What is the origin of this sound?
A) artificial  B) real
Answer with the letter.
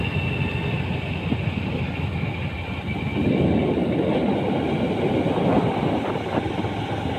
B